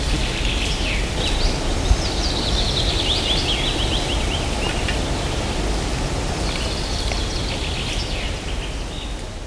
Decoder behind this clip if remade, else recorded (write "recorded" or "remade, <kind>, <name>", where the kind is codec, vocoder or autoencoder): recorded